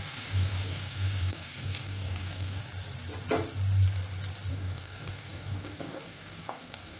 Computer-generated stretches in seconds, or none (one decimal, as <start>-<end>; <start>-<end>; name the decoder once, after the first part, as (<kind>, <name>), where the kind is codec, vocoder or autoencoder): 0.0-2.6 (codec, DAC); 4.5-7.0